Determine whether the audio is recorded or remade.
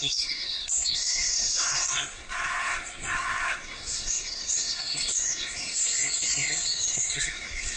remade